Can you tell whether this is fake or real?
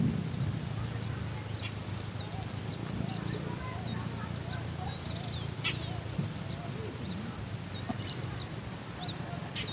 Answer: real